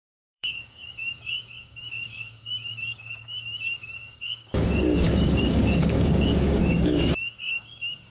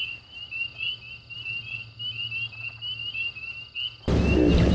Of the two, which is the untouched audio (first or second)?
second